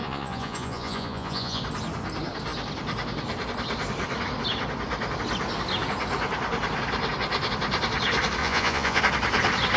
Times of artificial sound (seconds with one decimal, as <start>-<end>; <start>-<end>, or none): 0.0-1.6; 8.4-9.0